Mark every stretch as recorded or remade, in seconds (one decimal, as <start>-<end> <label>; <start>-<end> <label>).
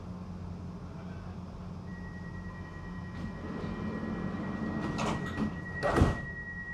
0.0-6.7 recorded